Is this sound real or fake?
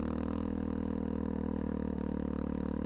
real